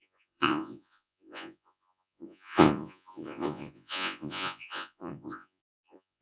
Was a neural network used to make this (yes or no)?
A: yes